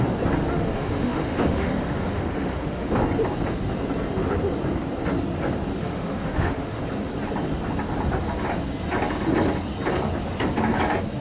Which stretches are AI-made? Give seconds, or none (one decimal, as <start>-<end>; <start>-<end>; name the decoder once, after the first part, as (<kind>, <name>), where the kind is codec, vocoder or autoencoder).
0.5-2.9 (autoencoder, DAC-VAE); 5.8-6.8